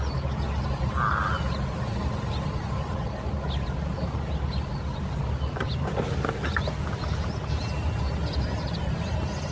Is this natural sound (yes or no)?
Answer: yes